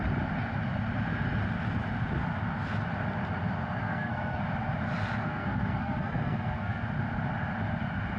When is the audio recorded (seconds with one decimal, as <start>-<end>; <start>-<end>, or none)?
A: 0.0-3.8; 4.4-5.2; 6.8-8.2